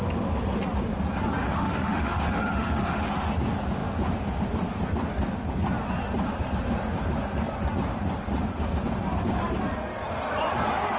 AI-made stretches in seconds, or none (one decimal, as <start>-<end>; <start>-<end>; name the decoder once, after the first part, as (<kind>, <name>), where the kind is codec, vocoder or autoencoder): 1.4-3.3 (autoencoder, DAC-VAE)

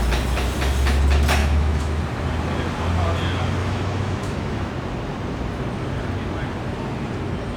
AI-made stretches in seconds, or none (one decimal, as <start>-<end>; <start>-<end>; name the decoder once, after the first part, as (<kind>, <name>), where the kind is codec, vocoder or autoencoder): 1.4-2.0 (autoencoder, DAC-VAE); 3.6-4.7

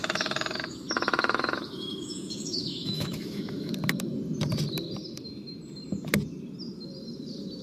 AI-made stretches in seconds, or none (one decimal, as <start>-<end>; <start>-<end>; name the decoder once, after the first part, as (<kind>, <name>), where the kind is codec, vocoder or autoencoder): 0.0-3.7 (autoencoder, DAC-VAE)

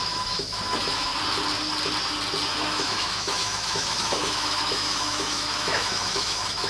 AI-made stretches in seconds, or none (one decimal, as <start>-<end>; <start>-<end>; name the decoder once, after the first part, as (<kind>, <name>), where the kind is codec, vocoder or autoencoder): 0.0-1.1 (autoencoder, DAC-VAE); 2.5-6.7

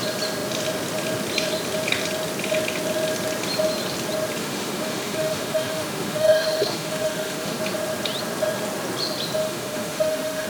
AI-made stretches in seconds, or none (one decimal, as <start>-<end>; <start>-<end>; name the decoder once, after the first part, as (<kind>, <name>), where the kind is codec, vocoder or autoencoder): 4.4-7.6 (autoencoder, DAC-VAE); 9.4-10.5